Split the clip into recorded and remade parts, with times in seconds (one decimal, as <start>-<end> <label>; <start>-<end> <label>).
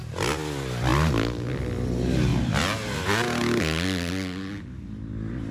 0.0-5.5 recorded